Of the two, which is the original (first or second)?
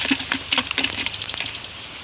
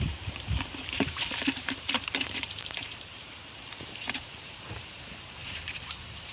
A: first